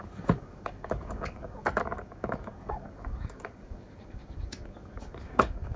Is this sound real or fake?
fake